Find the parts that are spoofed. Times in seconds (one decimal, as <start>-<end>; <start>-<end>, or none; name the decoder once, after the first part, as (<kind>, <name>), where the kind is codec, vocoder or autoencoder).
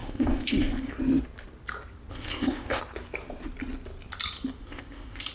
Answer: 0.0-0.9 (codec, ZipCodec); 2.1-2.8; 4.6-5.3